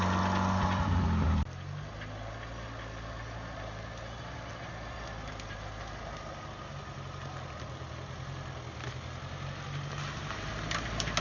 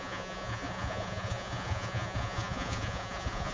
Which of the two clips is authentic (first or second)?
first